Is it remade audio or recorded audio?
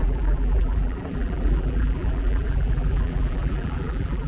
remade